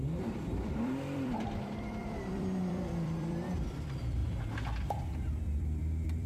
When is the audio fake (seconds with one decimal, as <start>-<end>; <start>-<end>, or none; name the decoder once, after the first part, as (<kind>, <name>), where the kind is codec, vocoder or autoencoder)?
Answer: 0.0-4.2 (vocoder, BigVGAN v2); 5.4-6.3